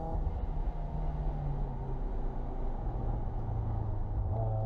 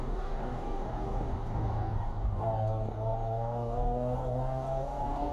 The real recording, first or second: first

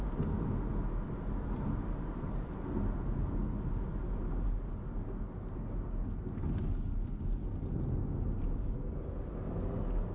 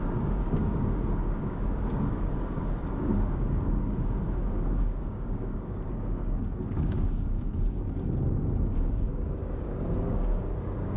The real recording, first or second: first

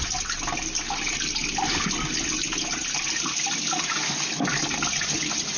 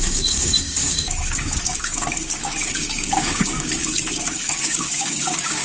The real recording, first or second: first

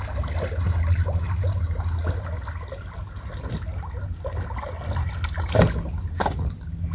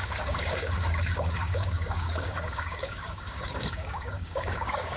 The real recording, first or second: first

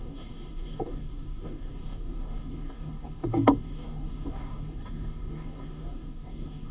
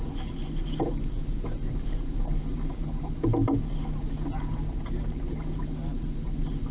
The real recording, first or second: second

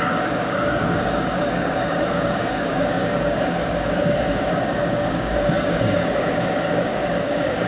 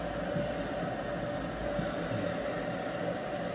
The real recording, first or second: second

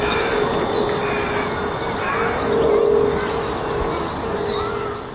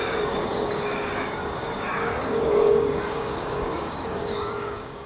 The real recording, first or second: first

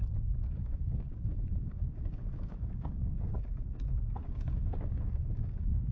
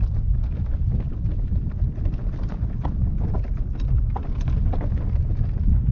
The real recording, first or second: second